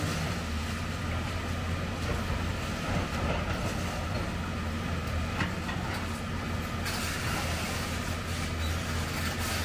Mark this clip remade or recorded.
recorded